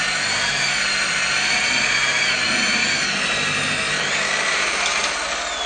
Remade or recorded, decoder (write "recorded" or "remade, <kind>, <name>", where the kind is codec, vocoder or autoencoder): recorded